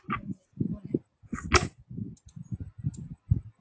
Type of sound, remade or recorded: recorded